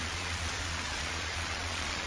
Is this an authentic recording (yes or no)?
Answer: no